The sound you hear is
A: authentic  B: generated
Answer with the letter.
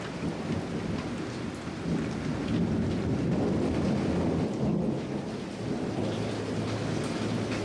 A